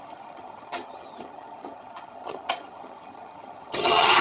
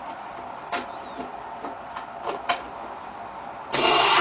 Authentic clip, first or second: second